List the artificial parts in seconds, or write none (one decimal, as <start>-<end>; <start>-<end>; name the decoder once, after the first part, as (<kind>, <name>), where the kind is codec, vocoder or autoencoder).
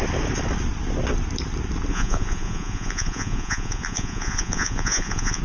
1.9-5.4 (vocoder, Vocos)